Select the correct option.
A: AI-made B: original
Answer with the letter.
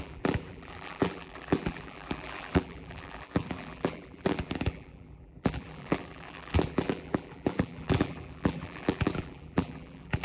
A